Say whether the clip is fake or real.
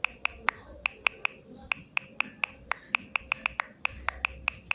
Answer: real